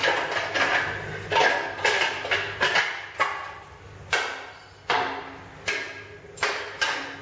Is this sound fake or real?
real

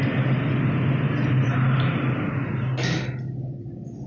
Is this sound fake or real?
real